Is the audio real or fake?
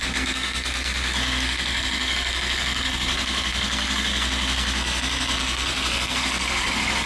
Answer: fake